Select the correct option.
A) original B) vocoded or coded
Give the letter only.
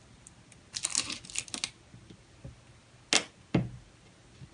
A